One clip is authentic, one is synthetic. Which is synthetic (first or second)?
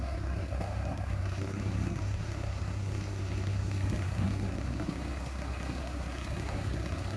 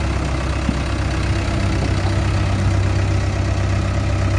first